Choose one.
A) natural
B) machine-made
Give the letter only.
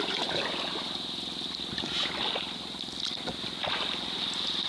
A